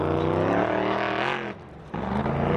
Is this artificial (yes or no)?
no